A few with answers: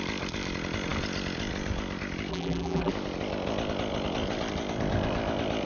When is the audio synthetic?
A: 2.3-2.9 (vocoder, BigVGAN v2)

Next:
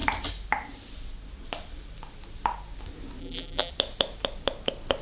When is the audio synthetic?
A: 3.2-3.7 (vocoder, BigVGAN v2)

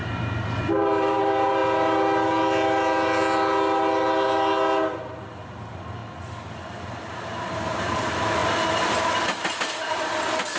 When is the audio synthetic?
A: 0.0-1.6 (vocoder, BigVGAN v2); 4.9-6.0; 6.7-8.4; 9.9-10.6

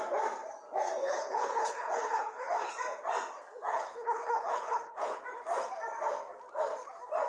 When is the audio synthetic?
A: 1.0-2.7 (codec, HILCodec); 3.7-5.2

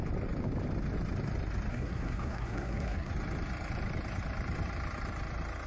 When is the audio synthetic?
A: 1.7-3.1 (codec, SNAC)